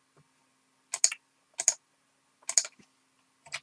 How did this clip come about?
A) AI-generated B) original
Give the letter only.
B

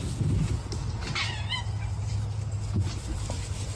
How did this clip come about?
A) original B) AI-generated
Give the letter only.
A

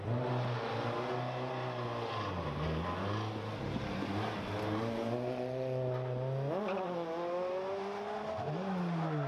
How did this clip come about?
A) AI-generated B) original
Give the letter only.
B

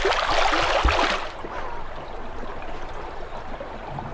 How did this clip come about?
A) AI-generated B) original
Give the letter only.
B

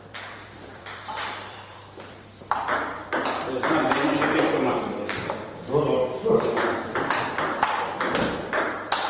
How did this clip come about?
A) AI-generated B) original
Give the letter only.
A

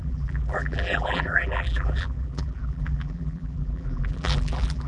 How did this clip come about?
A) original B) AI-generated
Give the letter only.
B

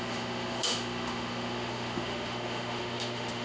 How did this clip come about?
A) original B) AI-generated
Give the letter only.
B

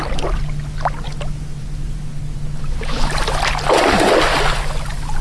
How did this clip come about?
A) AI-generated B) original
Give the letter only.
B